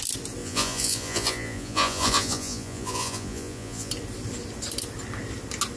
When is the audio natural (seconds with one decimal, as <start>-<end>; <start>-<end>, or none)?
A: 0.0-0.4; 3.9-5.8